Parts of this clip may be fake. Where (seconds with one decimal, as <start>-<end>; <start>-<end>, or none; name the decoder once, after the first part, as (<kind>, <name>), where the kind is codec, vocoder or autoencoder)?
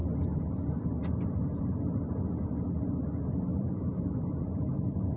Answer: 3.5-5.2 (vocoder, BigVGAN v2)